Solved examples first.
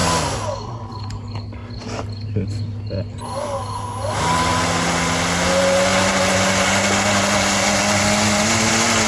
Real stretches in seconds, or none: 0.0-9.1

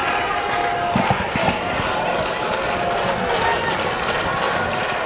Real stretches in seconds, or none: 0.0-5.1